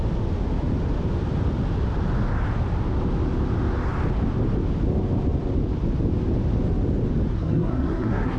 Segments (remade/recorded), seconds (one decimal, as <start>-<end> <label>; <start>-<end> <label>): 0.0-7.3 recorded; 7.3-8.4 remade